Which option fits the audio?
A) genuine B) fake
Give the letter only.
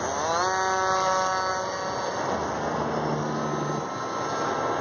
A